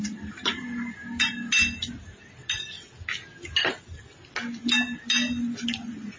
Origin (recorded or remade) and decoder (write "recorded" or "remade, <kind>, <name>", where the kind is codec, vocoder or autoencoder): recorded